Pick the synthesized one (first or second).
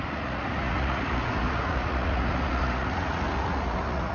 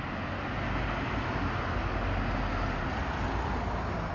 first